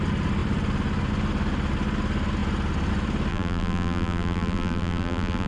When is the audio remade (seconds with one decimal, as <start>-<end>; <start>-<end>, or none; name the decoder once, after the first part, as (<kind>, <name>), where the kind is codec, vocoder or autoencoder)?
3.3-5.5 (vocoder, BigVGAN v2)